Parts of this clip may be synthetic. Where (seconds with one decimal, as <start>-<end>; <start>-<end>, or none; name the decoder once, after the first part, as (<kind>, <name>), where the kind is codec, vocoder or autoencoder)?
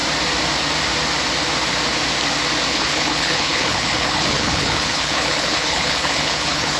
2.7-6.8 (codec, HILCodec)